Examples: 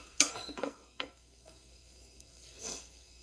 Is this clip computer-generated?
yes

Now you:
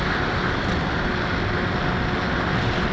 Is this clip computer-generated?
no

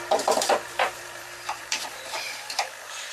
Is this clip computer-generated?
yes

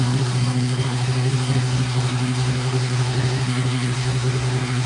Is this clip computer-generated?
yes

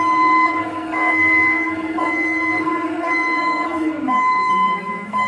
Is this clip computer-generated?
yes